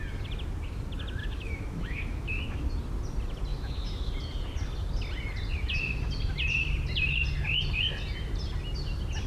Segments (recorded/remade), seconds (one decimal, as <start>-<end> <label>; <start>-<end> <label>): 0.0-1.2 recorded; 1.2-2.7 remade; 2.7-3.5 recorded; 3.5-4.1 remade; 4.1-9.3 recorded